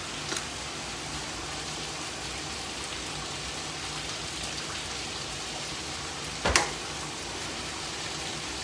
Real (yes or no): no